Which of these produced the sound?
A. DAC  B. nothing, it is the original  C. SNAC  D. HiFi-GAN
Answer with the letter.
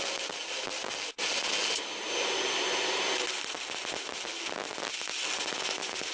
B